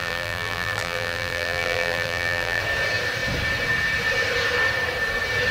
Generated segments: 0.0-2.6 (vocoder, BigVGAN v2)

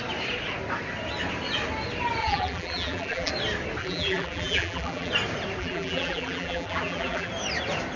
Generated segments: 2.2-3.3 (vocoder, BigVGAN v2); 3.8-5.1; 5.6-7.3

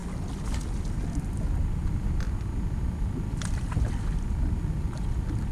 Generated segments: none

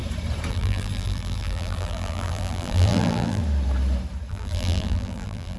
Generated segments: 0.5-3.4 (vocoder, BigVGAN v2); 4.3-5.6

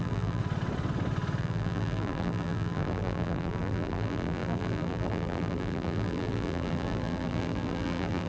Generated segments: 0.0-0.4 (vocoder, BigVGAN v2); 1.4-8.3

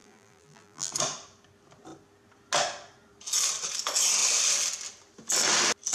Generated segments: 0.0-0.9 (vocoder, BigVGAN v2)